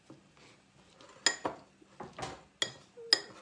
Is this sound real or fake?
real